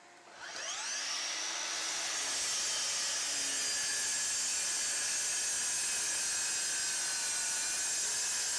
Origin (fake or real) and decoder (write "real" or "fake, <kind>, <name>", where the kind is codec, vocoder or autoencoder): real